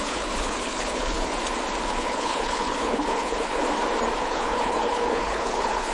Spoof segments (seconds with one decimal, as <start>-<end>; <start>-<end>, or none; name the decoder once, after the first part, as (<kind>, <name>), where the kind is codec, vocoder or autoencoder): 0.0-1.3 (codec, HILCodec); 1.9-3.6; 4.2-5.9